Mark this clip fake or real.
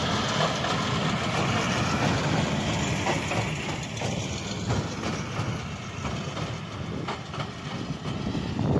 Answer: real